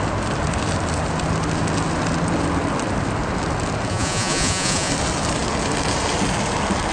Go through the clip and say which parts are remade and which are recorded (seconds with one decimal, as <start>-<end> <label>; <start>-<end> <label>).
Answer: 0.0-3.9 recorded; 3.9-4.9 remade; 4.9-6.9 recorded